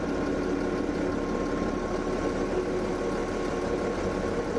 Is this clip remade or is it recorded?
recorded